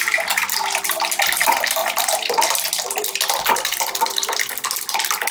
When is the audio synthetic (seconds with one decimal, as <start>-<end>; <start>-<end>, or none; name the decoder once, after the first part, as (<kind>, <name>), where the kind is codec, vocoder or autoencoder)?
none